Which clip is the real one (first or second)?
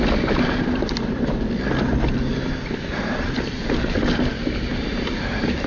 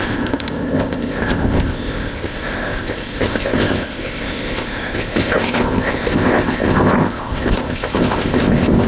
first